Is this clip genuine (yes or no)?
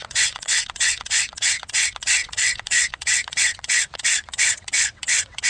no